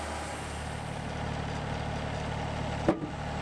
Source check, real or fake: real